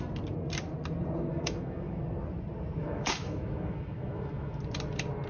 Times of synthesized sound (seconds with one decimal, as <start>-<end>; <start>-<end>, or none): 1.3-2.0; 2.8-4.6